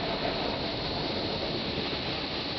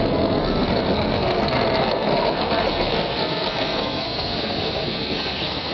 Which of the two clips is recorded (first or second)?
first